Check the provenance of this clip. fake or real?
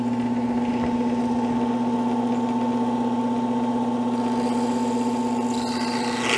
real